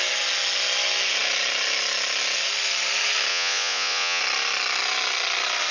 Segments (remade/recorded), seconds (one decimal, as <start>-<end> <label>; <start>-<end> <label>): 0.0-3.3 recorded; 3.3-4.2 remade; 4.2-5.7 recorded